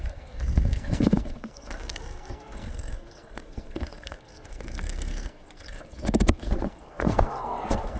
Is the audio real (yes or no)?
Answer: no